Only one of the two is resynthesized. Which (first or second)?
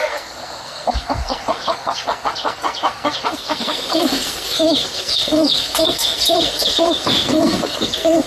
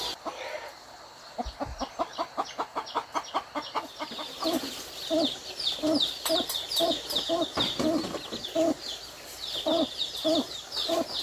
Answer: first